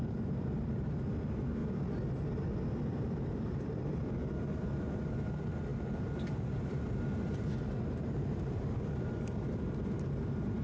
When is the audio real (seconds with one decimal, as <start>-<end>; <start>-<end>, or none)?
1.6-2.9